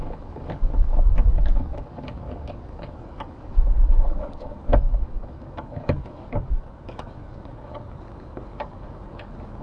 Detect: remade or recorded remade